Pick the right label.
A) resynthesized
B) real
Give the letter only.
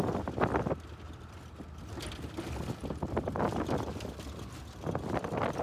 B